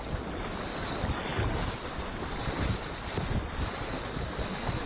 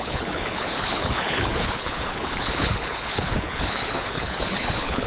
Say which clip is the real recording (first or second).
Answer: first